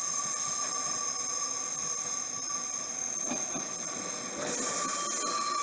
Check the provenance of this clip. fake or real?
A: real